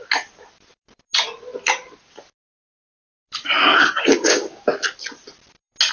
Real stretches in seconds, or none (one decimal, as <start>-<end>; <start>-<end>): 0.0-3.6; 4.6-5.9